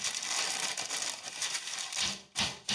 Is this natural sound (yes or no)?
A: yes